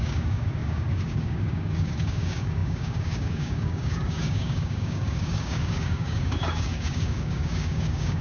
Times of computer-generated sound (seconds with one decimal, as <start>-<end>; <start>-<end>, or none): 0.0-8.2